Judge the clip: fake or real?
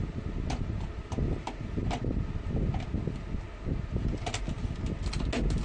real